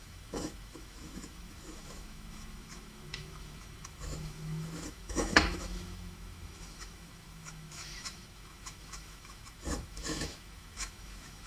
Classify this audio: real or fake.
fake